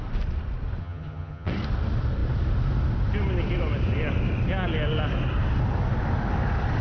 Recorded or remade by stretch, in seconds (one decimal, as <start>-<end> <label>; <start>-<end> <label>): 0.0-0.8 recorded; 0.8-1.5 remade; 1.5-6.8 recorded